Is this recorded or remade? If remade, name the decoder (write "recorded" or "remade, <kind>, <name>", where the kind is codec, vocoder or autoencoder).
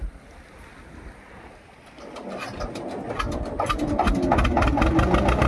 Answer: recorded